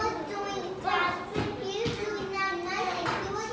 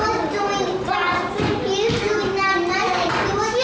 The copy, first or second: second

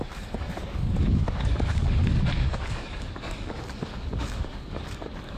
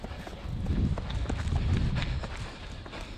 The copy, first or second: first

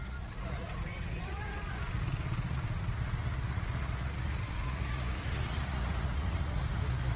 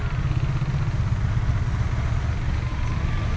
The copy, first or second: first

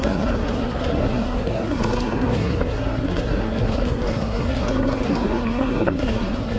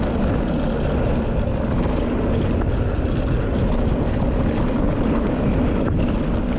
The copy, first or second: first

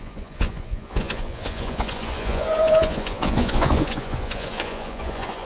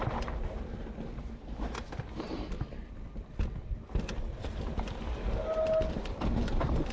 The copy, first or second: first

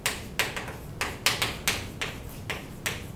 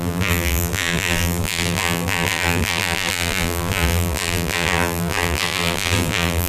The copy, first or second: second